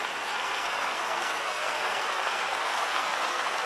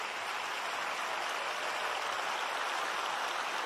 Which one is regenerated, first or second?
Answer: first